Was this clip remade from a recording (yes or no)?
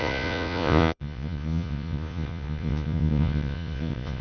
yes